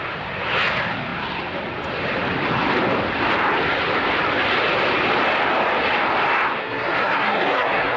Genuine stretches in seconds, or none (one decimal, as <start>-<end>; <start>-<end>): 0.0-6.6